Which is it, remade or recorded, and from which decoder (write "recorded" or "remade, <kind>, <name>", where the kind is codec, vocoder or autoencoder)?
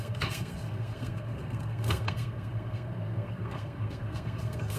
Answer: remade, codec, SNAC